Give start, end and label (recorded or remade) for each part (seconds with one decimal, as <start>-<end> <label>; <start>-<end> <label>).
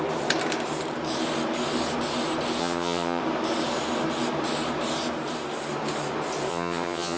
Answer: 0.0-2.6 recorded; 2.6-3.2 remade; 3.2-6.5 recorded; 6.5-7.2 remade